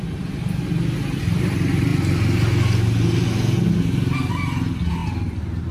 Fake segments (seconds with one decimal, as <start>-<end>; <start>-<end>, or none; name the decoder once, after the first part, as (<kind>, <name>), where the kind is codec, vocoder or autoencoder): none